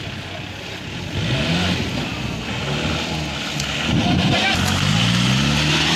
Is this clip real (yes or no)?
yes